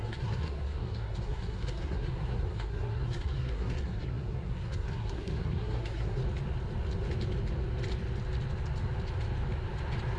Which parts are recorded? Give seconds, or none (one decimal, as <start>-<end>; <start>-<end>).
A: 6.2-10.2